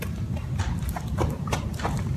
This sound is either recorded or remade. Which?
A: recorded